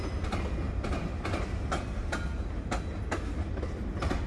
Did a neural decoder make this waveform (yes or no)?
no